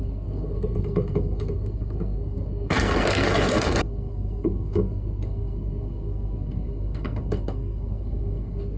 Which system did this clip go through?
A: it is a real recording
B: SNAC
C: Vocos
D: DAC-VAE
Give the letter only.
B